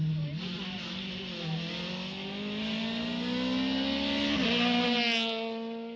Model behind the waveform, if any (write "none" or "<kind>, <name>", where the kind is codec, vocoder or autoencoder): none